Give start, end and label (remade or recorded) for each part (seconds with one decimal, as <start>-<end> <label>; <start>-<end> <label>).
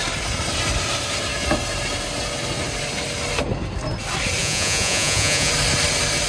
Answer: 0.0-4.4 recorded; 4.4-5.5 remade; 5.5-6.3 recorded